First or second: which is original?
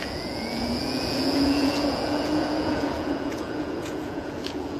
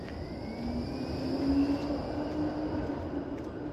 second